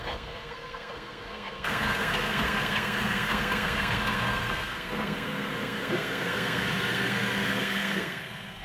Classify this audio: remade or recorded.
remade